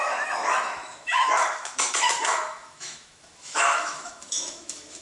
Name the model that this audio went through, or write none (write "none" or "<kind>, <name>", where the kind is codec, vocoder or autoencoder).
autoencoder, DAC-VAE